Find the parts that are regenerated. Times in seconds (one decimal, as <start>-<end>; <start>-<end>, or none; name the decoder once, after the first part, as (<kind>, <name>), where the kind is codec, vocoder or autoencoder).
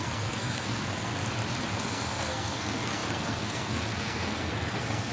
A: 0.0-1.1 (codec, SNAC); 1.7-5.1